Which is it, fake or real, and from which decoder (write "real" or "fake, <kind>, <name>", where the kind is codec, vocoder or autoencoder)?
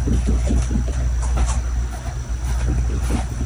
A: real